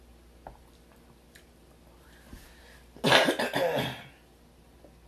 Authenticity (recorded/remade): recorded